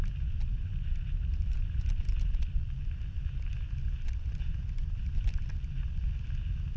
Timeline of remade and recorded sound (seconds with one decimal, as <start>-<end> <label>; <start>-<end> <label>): 0.0-0.5 recorded; 0.5-3.3 remade; 3.3-4.6 recorded; 4.6-5.5 remade; 5.5-6.8 recorded